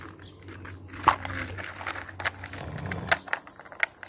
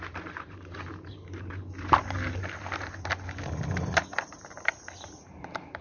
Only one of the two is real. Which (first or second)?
first